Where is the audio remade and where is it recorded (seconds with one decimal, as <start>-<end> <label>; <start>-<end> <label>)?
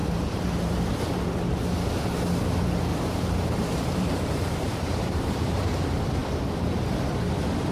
0.0-1.0 remade; 1.0-2.9 recorded; 2.9-5.7 remade; 5.7-7.7 recorded